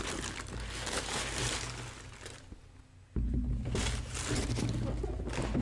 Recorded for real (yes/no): yes